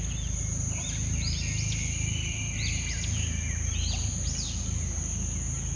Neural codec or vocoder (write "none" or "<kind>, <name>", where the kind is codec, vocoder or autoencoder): none